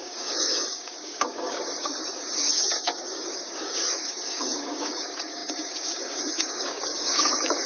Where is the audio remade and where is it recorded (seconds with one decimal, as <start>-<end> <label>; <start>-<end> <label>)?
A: 0.0-7.7 remade